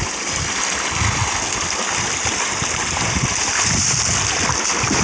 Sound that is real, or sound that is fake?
real